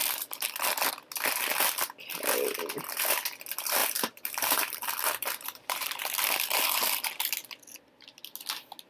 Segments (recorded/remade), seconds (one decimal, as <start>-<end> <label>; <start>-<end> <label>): 0.0-3.8 recorded; 3.8-6.0 remade; 6.0-8.9 recorded